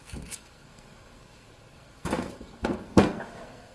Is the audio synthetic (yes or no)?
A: yes